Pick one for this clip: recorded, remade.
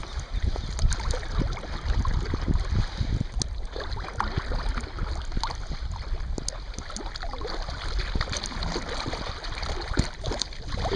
recorded